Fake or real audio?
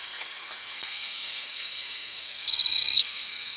fake